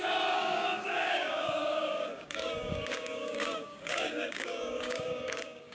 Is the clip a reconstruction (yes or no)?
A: yes